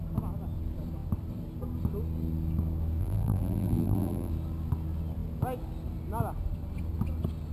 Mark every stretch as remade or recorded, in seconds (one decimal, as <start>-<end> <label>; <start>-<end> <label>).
0.0-3.0 recorded; 3.0-4.3 remade; 4.3-7.5 recorded